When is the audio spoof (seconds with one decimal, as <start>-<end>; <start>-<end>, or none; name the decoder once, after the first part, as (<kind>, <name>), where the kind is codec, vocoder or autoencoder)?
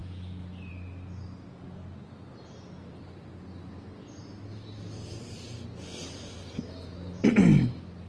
none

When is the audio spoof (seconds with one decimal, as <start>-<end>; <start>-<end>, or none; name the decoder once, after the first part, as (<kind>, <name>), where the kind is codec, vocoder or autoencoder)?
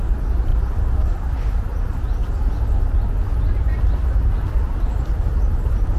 none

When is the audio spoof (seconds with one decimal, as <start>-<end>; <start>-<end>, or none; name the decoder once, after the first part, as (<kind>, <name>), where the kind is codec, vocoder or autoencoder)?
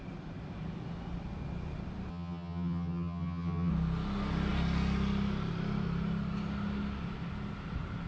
2.1-3.7 (vocoder, HiFi-GAN)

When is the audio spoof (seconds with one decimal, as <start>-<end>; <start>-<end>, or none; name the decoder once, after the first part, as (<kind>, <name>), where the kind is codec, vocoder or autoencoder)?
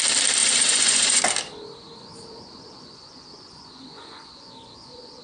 0.4-1.2 (vocoder, Vocos); 2.0-5.2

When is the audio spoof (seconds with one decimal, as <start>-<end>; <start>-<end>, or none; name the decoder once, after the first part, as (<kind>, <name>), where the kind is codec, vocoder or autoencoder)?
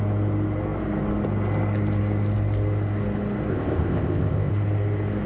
3.5-4.5 (codec, ZipCodec)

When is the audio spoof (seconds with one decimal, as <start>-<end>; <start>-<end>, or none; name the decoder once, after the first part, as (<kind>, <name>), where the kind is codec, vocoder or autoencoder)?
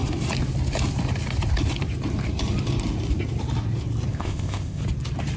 4.1-4.8 (codec, ZipCodec)